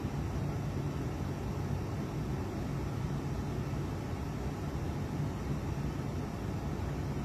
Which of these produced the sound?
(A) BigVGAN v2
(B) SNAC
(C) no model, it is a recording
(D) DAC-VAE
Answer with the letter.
C